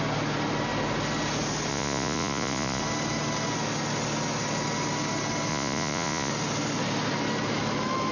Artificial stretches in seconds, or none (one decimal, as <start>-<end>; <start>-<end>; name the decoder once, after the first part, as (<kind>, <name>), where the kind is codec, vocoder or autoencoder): 1.7-2.8 (vocoder, Vocos); 5.5-6.3

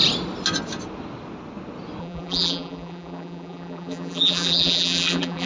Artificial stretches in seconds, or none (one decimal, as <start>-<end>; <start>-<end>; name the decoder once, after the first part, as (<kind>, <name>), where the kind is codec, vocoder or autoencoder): 2.0-5.5 (vocoder, BigVGAN v2)